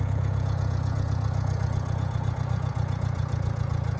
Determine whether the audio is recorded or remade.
remade